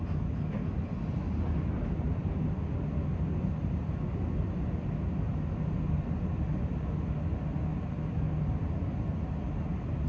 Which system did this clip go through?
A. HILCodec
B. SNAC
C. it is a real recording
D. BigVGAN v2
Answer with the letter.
C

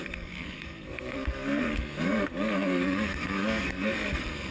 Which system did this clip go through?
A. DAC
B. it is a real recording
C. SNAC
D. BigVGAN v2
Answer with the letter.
C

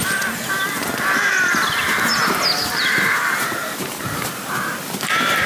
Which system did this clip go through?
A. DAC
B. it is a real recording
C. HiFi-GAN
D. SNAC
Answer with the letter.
B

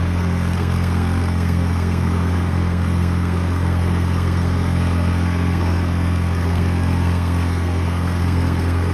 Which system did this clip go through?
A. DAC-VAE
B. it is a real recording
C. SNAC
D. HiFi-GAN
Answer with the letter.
C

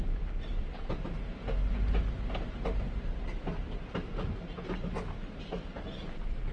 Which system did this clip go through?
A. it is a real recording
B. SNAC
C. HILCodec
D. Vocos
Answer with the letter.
A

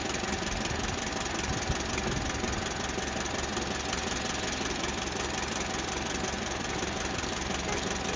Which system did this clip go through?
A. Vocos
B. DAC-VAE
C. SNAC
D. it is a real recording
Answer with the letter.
D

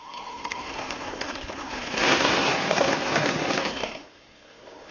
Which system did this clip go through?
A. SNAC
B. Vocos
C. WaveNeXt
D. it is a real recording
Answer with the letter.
A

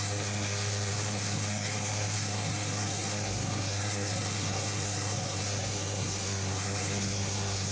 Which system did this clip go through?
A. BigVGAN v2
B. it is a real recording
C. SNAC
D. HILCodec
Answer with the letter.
C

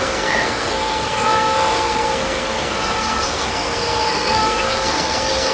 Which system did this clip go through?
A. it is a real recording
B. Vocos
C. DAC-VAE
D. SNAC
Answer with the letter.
D